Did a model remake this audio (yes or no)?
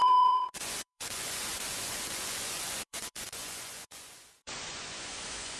yes